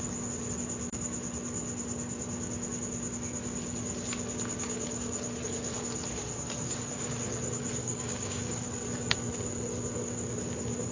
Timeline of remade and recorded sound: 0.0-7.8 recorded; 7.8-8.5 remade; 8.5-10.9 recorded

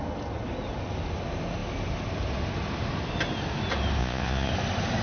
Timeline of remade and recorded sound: 0.0-4.0 recorded; 4.0-4.5 remade; 4.5-5.0 recorded

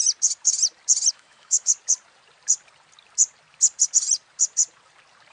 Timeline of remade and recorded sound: 0.0-1.1 recorded; 1.1-1.7 remade; 1.7-5.3 recorded

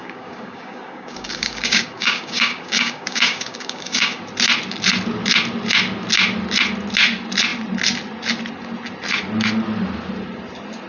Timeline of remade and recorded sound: 0.0-4.2 remade; 4.2-10.9 recorded

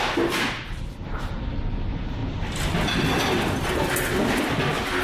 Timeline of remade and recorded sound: 0.0-5.0 recorded

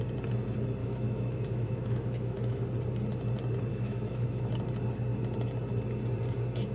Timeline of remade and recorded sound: 0.0-0.8 recorded; 0.8-2.6 remade; 2.6-3.7 recorded; 3.7-4.5 remade; 4.5-6.7 recorded

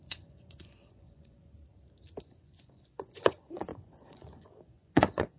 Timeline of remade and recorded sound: 0.0-1.5 remade; 1.5-2.2 recorded; 2.2-5.4 remade